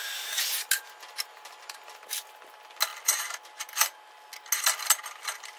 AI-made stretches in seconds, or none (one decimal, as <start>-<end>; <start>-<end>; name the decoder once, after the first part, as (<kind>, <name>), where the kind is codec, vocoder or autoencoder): none

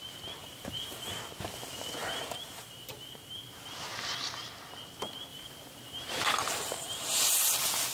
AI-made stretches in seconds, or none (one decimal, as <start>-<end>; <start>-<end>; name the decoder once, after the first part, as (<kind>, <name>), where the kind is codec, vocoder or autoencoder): 0.4-1.2 (vocoder, BigVGAN v2); 2.0-4.2; 5.3-7.5

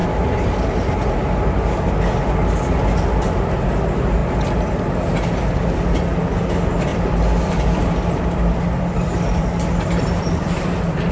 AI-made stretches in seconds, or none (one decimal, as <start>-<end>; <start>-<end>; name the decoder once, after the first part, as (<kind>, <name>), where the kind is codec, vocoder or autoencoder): 6.9-11.1 (vocoder, BigVGAN v2)

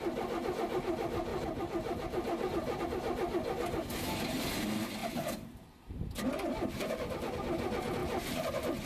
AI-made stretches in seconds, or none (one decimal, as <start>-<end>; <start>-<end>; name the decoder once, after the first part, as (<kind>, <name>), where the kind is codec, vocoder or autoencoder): 1.3-2.8 (vocoder, BigVGAN v2); 5.0-7.3; 8.0-8.9

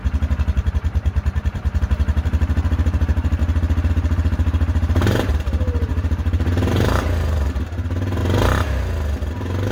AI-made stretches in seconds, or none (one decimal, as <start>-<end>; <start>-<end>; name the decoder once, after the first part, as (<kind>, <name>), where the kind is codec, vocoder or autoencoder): 0.0-3.4 (vocoder, BigVGAN v2); 3.9-8.2